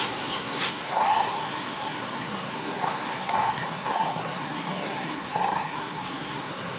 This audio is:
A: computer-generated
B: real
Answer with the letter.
A